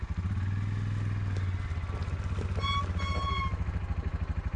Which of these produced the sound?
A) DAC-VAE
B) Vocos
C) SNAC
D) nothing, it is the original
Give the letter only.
D